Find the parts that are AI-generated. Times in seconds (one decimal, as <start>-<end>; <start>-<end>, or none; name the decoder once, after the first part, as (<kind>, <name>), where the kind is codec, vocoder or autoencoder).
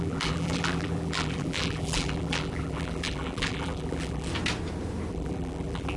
0.0-4.3 (vocoder, BigVGAN v2); 5.1-6.0